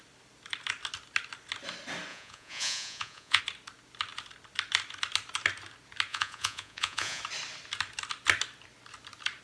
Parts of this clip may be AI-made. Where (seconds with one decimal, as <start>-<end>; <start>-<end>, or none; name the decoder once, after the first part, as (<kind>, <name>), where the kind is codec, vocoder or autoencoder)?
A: 2.1-3.4 (vocoder, Vocos); 6.1-7.2